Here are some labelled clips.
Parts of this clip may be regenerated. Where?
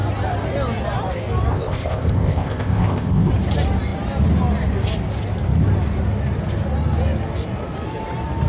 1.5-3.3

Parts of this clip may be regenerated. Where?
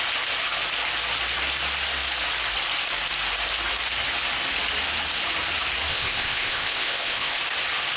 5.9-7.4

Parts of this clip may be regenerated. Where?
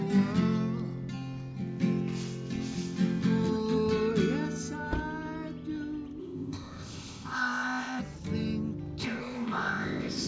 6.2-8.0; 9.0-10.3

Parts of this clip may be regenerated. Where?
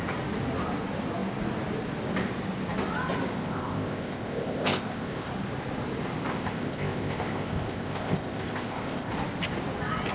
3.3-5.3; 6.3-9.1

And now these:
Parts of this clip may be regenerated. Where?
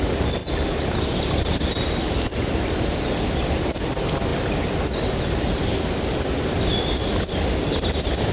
none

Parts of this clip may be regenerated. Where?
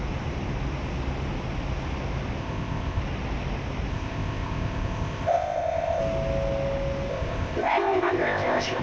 2.4-3.0; 3.9-6.0; 7.1-8.8